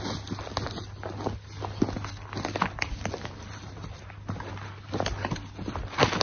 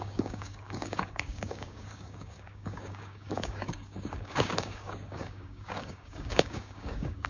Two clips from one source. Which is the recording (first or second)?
first